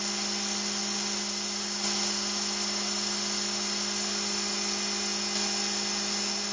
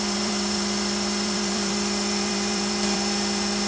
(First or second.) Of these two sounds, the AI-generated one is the second